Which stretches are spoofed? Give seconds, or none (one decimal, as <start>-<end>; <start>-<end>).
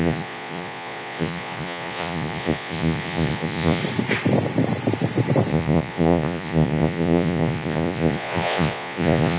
0.0-3.8; 5.5-9.4